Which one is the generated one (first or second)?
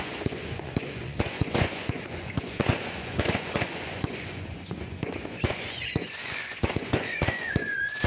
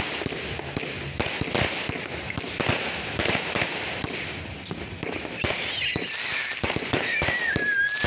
first